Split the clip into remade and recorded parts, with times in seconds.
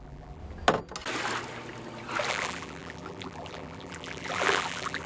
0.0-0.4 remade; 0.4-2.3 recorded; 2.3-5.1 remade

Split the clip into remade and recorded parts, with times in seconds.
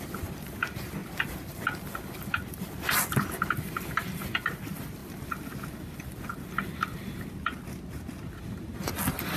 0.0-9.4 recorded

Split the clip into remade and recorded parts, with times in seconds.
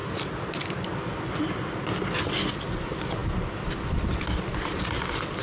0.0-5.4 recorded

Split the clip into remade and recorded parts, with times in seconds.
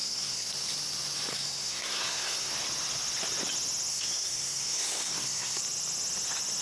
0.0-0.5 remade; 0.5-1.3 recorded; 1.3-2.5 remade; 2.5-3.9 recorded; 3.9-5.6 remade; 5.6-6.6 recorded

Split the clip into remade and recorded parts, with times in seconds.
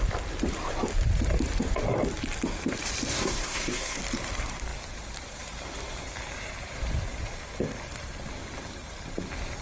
0.0-3.1 recorded; 3.1-4.0 remade; 4.0-9.6 recorded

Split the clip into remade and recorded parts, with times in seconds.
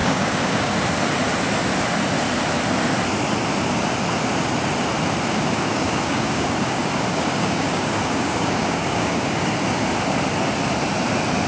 0.0-0.7 remade; 0.7-5.3 recorded; 5.3-9.5 remade; 9.5-11.5 recorded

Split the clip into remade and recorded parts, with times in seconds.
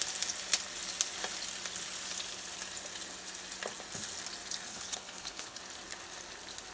0.0-4.7 recorded; 4.7-5.6 remade; 5.6-6.7 recorded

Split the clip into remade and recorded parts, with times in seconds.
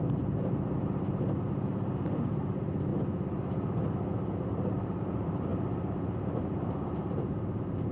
0.0-2.9 remade; 2.9-4.1 recorded; 4.1-5.5 remade; 5.5-6.4 recorded; 6.4-7.9 remade